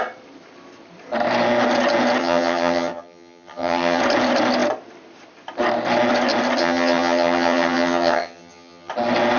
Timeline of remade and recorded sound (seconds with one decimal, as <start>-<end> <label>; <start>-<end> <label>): 0.0-2.2 recorded; 2.2-4.0 remade; 4.0-6.6 recorded; 6.6-8.9 remade; 8.9-9.4 recorded